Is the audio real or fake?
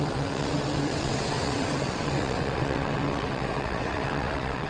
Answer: fake